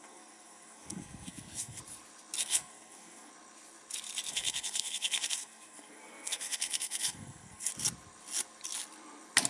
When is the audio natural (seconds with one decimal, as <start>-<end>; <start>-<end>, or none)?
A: 1.8-2.4; 3.3-4.3; 7.7-9.5